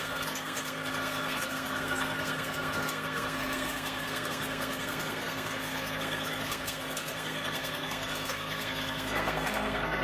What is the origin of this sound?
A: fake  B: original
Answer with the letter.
A